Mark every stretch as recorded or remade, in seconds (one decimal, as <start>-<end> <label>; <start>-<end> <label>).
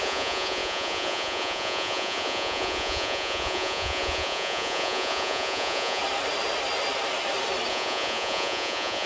0.0-6.0 remade; 6.0-7.7 recorded; 7.7-9.1 remade